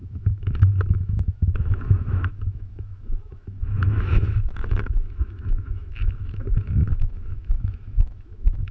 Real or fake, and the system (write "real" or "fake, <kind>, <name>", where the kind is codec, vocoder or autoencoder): fake, autoencoder, DAC-VAE